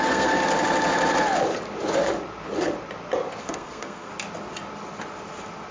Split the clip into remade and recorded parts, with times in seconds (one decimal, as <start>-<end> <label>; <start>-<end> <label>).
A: 0.0-0.4 remade; 0.4-3.4 recorded; 3.4-4.1 remade; 4.1-5.7 recorded